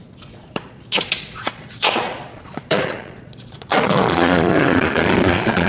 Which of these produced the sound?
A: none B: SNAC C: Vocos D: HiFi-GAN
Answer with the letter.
C